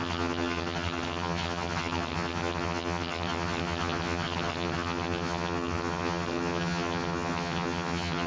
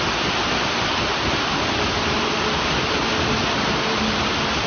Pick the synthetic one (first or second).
first